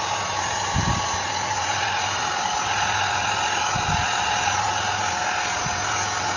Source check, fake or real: real